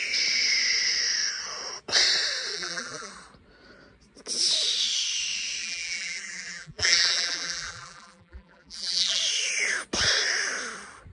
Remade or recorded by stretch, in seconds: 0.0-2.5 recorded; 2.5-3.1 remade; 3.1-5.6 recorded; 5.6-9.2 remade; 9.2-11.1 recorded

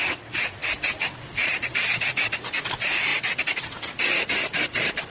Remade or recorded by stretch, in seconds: 0.0-5.1 recorded

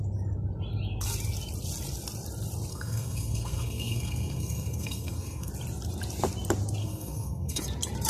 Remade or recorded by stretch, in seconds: 0.0-2.7 recorded; 2.7-5.5 remade; 5.5-6.8 recorded; 6.8-7.6 remade; 7.6-8.1 recorded

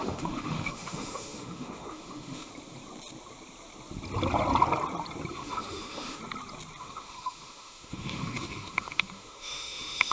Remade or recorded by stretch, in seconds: 0.0-2.5 remade; 2.5-5.3 recorded; 5.3-6.2 remade; 6.2-6.8 recorded; 6.8-10.1 remade

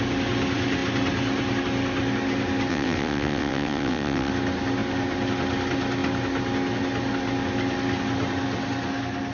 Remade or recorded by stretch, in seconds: 0.0-2.7 recorded; 2.7-4.3 remade; 4.3-9.3 recorded